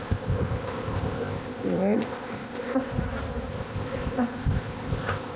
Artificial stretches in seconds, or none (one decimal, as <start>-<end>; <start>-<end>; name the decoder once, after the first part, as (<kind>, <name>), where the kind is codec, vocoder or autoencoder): 0.0-2.9 (codec, ZipCodec); 3.5-5.4